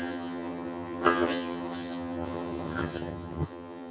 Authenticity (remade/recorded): remade